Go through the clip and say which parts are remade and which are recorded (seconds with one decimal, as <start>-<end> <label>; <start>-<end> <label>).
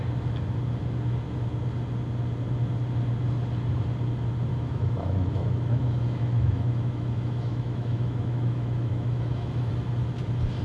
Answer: 0.0-4.5 recorded; 4.5-9.7 remade; 9.7-10.6 recorded